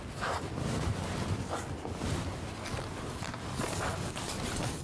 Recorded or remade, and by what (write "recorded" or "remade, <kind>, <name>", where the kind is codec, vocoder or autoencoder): recorded